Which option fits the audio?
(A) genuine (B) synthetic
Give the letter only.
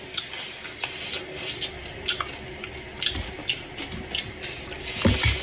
A